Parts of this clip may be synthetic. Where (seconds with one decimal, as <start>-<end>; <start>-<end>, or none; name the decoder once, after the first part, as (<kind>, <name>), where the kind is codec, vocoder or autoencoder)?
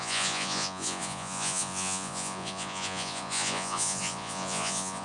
0.0-5.0 (vocoder, Vocos)